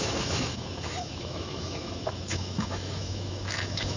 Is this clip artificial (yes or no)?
yes